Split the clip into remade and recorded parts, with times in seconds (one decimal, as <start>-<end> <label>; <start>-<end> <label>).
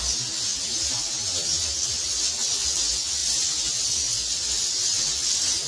0.0-5.7 recorded